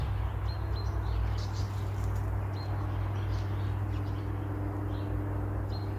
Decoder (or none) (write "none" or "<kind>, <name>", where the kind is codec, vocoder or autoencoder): none